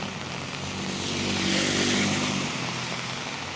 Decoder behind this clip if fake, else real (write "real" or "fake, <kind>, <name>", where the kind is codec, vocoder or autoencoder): real